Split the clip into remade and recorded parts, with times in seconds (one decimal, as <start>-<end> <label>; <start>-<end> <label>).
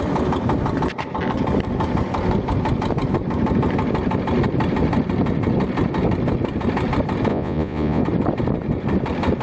0.0-7.3 recorded; 7.3-8.0 remade; 8.0-9.4 recorded